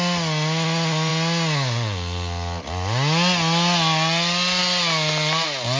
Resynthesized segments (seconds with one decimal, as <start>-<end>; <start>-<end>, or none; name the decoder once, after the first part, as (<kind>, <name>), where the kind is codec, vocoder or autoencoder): none